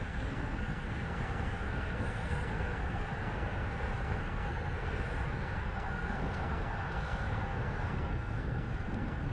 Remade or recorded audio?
remade